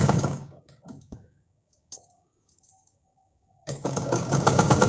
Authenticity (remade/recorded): remade